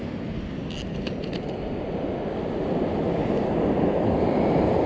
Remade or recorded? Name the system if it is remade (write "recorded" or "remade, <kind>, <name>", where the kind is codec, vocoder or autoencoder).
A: recorded